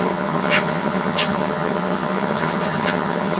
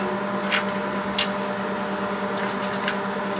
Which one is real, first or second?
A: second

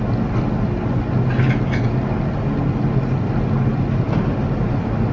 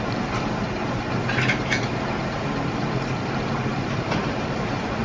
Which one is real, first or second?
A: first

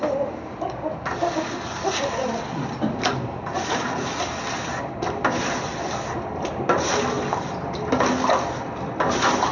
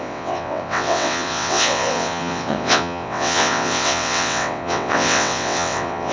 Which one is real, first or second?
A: first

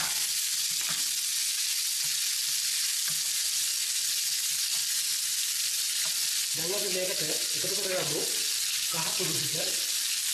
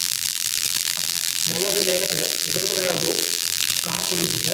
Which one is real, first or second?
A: first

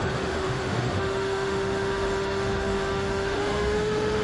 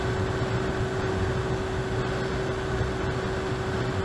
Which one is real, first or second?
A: second